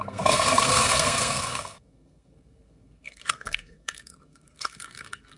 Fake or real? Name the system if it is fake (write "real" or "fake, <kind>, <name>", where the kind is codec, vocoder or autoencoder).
fake, codec, SNAC